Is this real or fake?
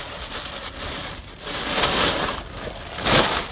real